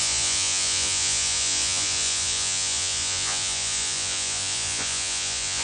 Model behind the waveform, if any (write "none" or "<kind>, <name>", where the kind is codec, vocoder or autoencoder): vocoder, Vocos